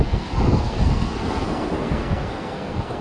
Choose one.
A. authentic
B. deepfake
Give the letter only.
B